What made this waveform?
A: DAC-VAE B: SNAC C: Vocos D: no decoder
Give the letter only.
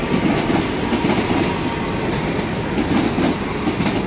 D